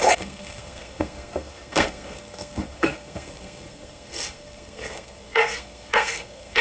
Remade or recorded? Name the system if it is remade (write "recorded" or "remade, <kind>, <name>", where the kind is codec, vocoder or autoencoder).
remade, codec, SNAC